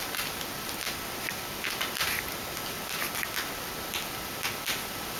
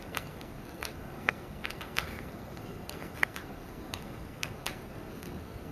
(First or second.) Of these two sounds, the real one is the first